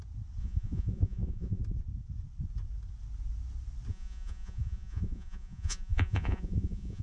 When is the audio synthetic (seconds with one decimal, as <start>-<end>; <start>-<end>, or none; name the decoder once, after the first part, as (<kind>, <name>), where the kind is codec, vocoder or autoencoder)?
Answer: 0.4-1.6 (vocoder, Vocos); 3.9-7.0